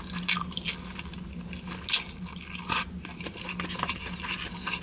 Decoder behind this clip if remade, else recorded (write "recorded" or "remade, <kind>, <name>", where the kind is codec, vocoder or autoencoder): recorded